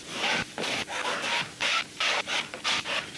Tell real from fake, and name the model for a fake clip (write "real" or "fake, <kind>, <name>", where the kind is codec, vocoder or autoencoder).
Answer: real